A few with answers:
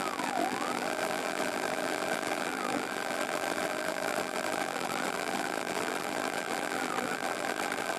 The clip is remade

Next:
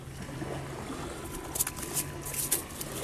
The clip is recorded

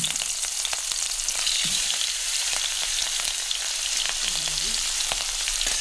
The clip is remade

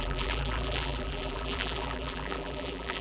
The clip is remade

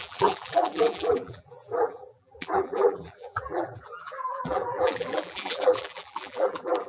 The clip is remade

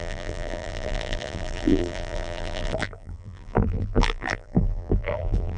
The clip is remade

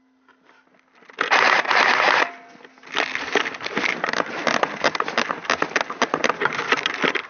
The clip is recorded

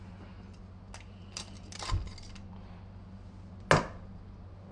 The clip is recorded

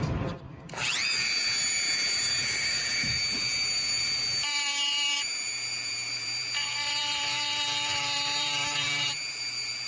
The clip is remade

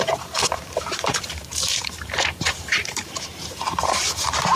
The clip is remade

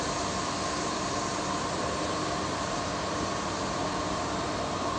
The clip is remade